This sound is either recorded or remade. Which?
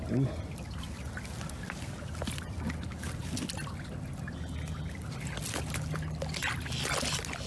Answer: recorded